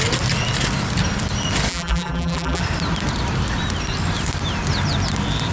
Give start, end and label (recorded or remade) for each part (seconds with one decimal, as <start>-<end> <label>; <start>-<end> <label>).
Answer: 0.0-1.7 recorded; 1.7-2.6 remade; 2.6-5.5 recorded